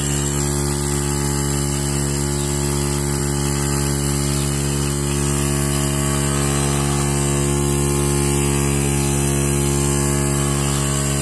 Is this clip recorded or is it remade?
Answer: recorded